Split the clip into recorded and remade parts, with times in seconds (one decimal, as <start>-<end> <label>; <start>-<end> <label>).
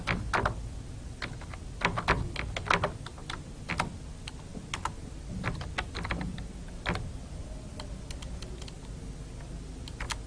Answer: 0.0-10.3 recorded